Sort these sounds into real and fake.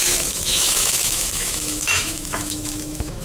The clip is fake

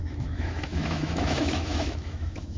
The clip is fake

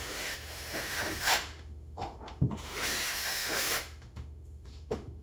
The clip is fake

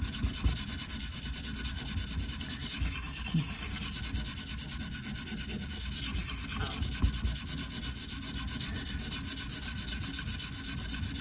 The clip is real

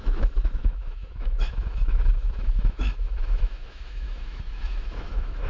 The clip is fake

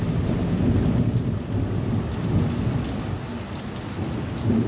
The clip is real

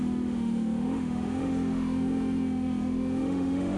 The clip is fake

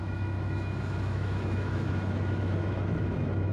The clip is fake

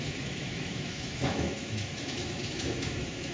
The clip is fake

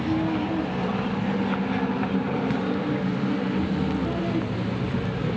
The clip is real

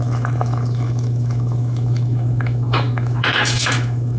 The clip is fake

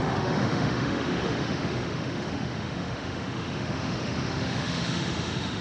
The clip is fake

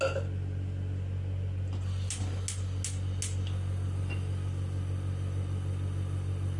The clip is real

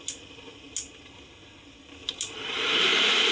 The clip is real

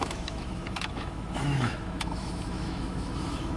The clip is fake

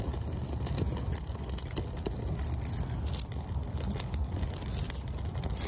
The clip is real